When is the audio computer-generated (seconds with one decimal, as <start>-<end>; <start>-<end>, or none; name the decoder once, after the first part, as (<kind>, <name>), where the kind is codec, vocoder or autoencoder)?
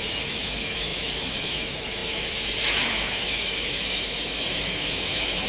0.0-5.5 (autoencoder, DAC-VAE)